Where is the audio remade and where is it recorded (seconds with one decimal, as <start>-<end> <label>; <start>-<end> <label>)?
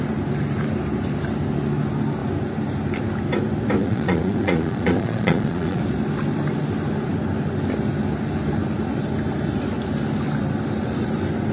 0.0-3.8 recorded; 3.8-5.8 remade; 5.8-11.5 recorded